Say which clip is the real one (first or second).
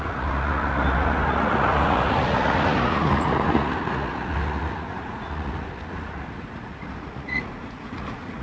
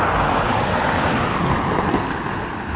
second